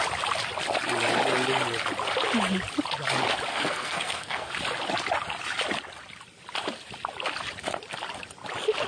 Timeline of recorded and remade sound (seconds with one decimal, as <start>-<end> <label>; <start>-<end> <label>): 0.0-3.5 recorded; 3.5-4.5 remade; 4.5-8.9 recorded

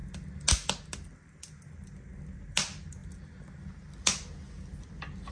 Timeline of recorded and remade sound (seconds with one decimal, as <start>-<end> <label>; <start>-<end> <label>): 0.0-5.3 recorded

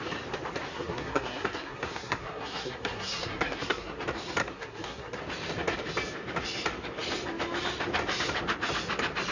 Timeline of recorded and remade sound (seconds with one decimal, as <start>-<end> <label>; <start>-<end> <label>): 0.0-0.7 recorded; 0.7-4.0 remade; 4.0-4.4 recorded; 4.4-5.2 remade; 5.2-9.3 recorded

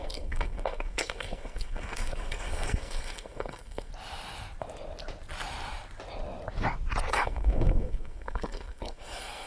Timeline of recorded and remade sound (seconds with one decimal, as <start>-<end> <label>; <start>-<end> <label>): 0.0-3.9 remade; 3.9-7.1 recorded; 7.1-9.5 remade

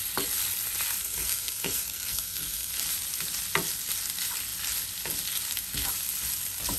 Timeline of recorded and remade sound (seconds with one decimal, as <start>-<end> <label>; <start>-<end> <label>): 0.0-1.0 recorded; 1.0-2.7 remade; 2.7-6.8 recorded

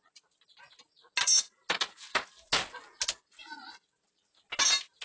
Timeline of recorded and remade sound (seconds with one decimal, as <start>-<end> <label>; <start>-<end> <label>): 0.0-5.0 recorded

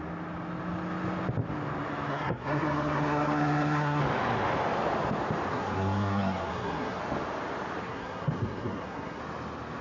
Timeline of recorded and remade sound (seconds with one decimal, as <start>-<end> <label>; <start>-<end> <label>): 0.0-2.1 recorded; 2.1-4.0 remade; 4.0-5.5 recorded; 5.5-7.0 remade; 7.0-7.8 recorded; 7.8-9.2 remade; 9.2-9.8 recorded

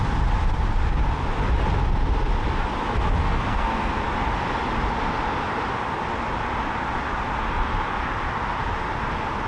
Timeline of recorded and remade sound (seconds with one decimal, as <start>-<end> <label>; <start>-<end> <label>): 0.0-3.2 recorded; 3.2-3.9 remade; 3.9-9.5 recorded